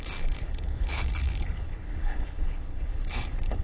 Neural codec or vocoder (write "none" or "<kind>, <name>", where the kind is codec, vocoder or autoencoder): codec, HILCodec